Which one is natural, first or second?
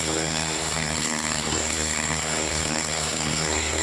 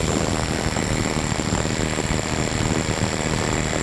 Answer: second